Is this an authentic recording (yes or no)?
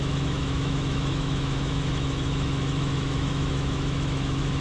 no